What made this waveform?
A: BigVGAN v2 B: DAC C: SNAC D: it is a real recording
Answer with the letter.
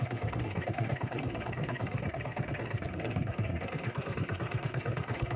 C